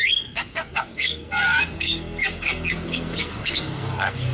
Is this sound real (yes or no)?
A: no